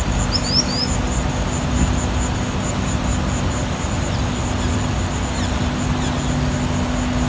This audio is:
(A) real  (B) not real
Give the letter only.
A